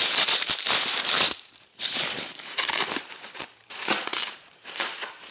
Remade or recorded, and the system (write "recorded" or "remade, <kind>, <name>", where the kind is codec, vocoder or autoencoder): remade, vocoder, BigVGAN v2